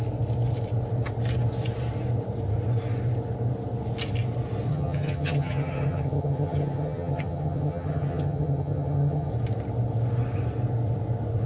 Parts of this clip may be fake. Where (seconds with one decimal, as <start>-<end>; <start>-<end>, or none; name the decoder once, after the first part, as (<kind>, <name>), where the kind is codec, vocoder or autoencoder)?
4.7-9.3 (vocoder, HiFi-GAN)